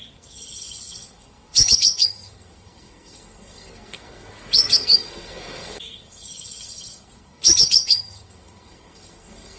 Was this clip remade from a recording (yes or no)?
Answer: yes